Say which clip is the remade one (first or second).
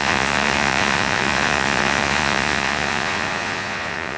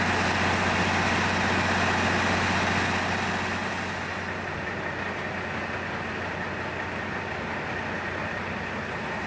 first